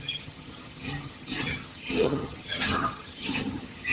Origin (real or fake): fake